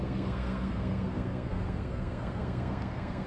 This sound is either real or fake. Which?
fake